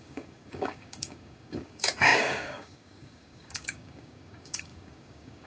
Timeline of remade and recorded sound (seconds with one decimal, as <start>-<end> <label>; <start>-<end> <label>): 0.0-5.5 remade